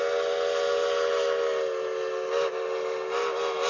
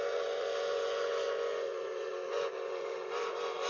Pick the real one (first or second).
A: first